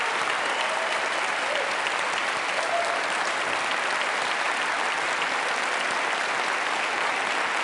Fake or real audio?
real